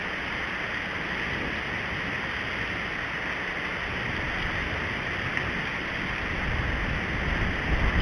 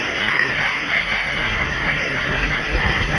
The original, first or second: first